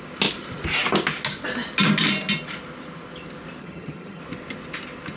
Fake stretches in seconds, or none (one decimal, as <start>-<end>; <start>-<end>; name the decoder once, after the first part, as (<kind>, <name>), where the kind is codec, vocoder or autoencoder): 3.6-4.2 (vocoder, HiFi-GAN)